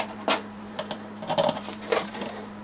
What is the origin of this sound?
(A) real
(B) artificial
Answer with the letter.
B